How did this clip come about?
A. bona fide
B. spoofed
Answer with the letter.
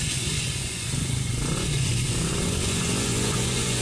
B